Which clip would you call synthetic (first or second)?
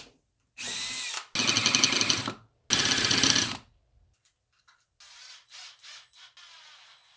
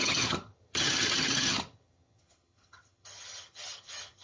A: second